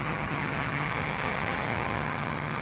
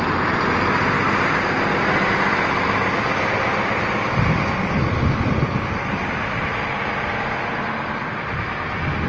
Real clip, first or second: second